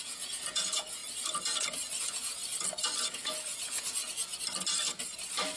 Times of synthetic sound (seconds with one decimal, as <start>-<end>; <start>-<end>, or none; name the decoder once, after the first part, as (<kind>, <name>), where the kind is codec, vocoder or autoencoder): 0.0-1.0 (vocoder, Vocos); 2.0-2.4; 3.1-4.3